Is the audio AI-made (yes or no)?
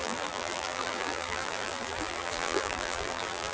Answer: yes